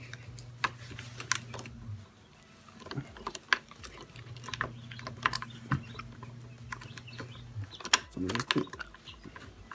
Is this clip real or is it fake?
real